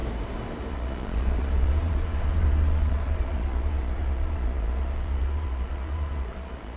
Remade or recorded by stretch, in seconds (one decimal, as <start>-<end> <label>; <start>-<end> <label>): 0.0-0.7 recorded; 0.7-6.8 remade